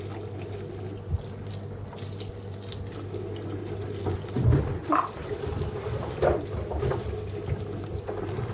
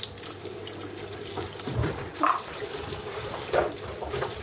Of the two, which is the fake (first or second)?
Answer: second